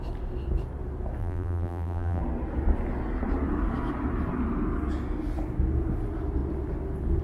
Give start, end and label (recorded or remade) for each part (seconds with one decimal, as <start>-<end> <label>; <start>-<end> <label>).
0.0-1.2 recorded; 1.2-2.2 remade; 2.2-7.2 recorded